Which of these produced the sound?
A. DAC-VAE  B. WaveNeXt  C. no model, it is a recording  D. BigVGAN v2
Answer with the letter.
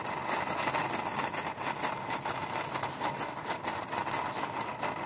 C